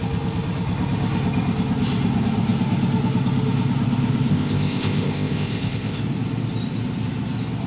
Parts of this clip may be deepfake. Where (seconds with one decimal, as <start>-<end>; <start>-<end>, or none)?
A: 4.3-6.0

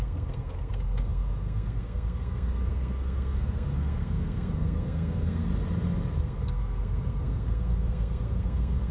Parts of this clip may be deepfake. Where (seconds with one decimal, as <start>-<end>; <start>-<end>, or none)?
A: 0.0-5.5; 6.2-8.9

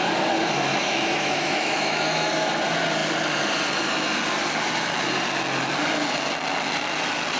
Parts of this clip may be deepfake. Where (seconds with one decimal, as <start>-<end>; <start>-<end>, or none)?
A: 0.7-2.3

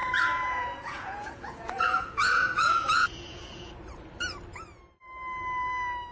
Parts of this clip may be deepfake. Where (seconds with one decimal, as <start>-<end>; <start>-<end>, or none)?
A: 0.0-3.7

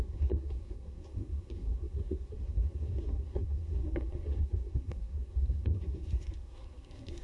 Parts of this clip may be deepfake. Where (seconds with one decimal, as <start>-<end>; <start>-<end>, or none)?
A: 0.0-7.2